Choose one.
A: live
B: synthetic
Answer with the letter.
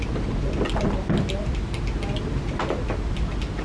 A